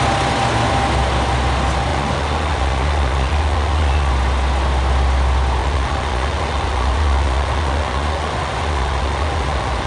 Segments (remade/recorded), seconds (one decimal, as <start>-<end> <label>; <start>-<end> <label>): 0.0-1.9 recorded; 1.9-4.1 remade; 4.1-5.6 recorded; 5.6-9.9 remade